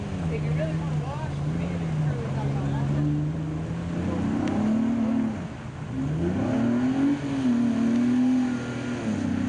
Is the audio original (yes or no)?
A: yes